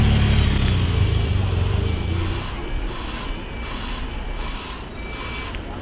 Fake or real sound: real